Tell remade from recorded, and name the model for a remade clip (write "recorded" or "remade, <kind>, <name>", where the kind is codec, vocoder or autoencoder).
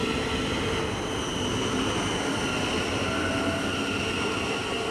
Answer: recorded